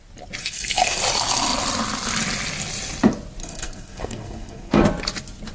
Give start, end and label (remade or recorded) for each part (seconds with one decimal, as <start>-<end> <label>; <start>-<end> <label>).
0.0-0.4 recorded; 0.4-1.0 remade; 1.0-3.4 recorded; 3.4-4.8 remade; 4.8-5.5 recorded